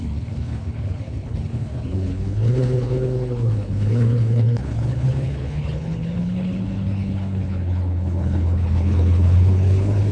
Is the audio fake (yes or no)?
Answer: yes